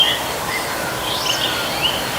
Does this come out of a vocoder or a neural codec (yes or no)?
no